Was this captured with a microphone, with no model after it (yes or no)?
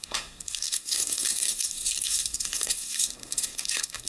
no